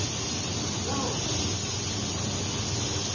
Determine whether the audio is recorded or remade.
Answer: recorded